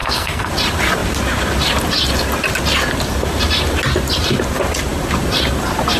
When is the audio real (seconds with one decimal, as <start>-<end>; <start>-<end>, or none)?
0.5-6.0